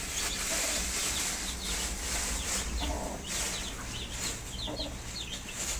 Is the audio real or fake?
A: real